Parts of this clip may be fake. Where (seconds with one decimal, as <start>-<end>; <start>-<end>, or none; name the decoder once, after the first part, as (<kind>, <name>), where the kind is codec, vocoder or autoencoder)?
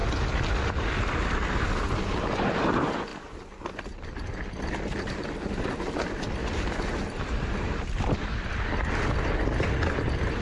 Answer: 3.1-4.3 (vocoder, BigVGAN v2); 6.4-8.3